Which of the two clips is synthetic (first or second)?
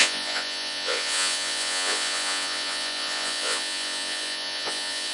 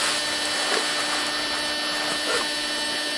first